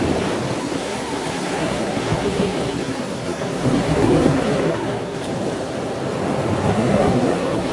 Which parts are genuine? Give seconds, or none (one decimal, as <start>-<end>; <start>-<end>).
0.0-0.6; 5.2-6.6